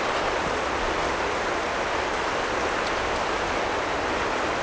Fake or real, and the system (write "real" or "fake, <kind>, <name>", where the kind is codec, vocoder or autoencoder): real